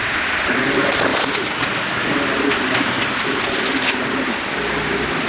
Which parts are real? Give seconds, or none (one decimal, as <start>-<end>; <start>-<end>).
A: 0.0-5.3